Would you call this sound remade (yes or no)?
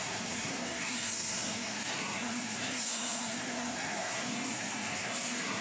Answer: yes